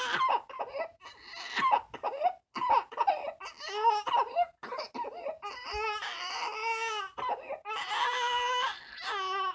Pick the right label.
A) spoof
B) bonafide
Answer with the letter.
B